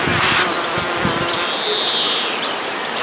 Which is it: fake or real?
real